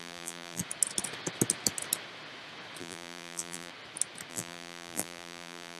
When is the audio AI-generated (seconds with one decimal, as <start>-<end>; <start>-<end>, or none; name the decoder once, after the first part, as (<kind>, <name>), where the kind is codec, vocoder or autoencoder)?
0.0-0.6 (vocoder, BigVGAN v2); 2.8-3.7; 4.3-5.8